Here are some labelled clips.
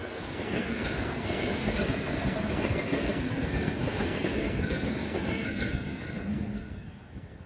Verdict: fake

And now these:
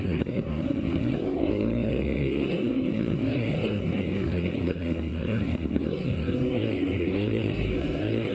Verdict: fake